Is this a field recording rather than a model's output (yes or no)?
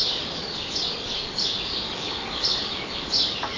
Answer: no